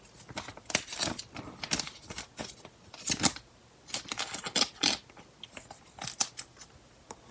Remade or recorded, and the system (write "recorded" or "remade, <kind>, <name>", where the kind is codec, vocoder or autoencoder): recorded